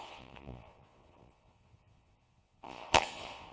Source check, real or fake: fake